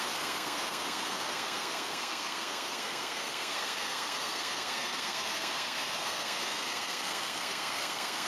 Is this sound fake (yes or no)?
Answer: yes